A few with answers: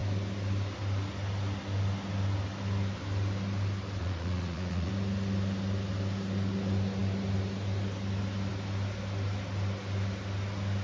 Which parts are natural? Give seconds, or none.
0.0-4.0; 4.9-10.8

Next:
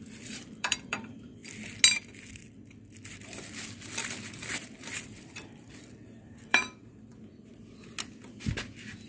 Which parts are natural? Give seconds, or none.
1.4-4.8; 7.1-8.7